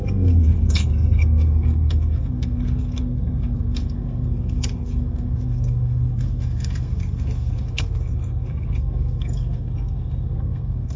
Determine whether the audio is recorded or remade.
remade